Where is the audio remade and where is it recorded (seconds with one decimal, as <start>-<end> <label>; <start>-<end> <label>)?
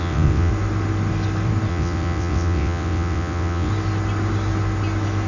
0.0-0.5 remade; 0.5-1.7 recorded; 1.7-3.7 remade; 3.7-5.3 recorded